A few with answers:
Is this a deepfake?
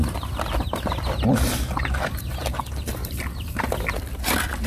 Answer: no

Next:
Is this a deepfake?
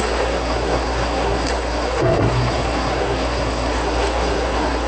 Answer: yes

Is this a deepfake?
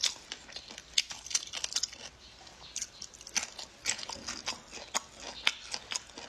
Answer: no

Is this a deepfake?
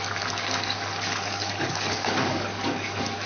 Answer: yes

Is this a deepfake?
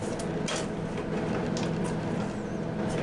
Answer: no